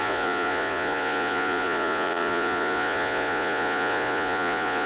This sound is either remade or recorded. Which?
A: remade